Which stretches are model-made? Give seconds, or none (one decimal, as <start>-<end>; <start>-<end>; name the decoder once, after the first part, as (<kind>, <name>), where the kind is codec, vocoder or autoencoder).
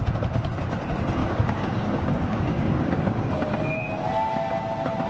1.2-3.5 (codec, DAC)